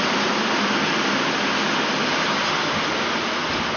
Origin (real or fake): real